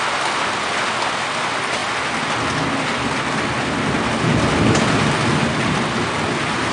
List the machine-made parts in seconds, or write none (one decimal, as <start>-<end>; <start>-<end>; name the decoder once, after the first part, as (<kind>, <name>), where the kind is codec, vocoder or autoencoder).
none